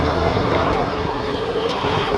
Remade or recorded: remade